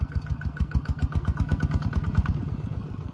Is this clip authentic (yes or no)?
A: no